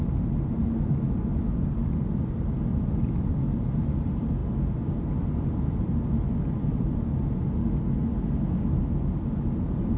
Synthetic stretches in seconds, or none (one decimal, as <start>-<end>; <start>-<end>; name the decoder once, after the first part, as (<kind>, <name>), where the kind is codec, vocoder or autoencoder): 2.7-3.3 (vocoder, BigVGAN v2); 4.4-5.1